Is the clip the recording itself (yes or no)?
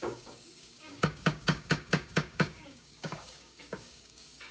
no